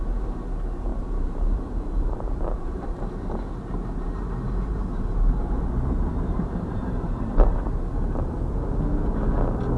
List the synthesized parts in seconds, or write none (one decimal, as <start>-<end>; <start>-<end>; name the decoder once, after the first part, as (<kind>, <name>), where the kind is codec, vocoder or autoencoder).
0.9-3.2 (vocoder, BigVGAN v2); 6.1-7.5